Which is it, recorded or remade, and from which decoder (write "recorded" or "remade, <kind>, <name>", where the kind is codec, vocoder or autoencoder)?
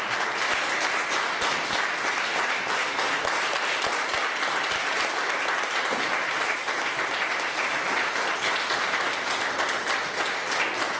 recorded